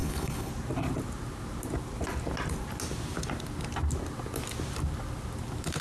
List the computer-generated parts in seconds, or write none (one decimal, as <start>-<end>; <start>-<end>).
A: 0.0-0.5